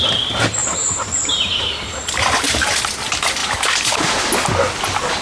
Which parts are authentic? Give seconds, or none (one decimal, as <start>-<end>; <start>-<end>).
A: 0.0-0.6; 2.8-3.4; 4.2-5.2